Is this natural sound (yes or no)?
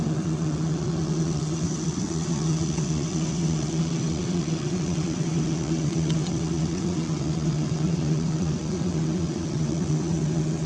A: no